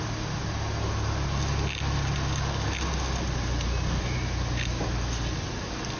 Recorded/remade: recorded